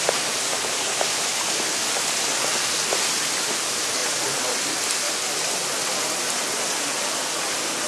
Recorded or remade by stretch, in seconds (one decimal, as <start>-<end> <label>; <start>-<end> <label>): 0.0-7.9 recorded